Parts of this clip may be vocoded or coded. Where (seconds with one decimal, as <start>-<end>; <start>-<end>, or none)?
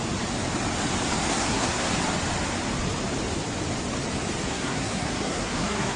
1.3-1.9; 4.5-6.0